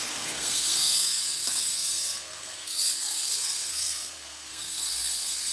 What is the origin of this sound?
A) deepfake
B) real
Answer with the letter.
A